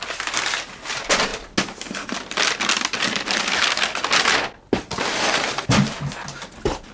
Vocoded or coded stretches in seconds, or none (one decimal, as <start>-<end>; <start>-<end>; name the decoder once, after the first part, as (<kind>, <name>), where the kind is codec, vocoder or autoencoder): none